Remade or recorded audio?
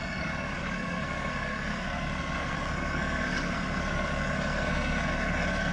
remade